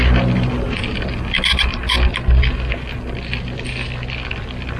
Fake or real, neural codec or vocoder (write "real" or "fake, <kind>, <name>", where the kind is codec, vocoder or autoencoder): real